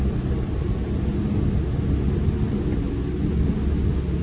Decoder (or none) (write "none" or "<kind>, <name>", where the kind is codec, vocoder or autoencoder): none